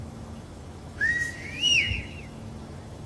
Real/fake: fake